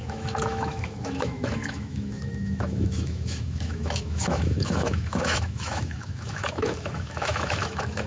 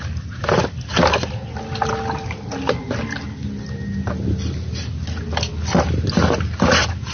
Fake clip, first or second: first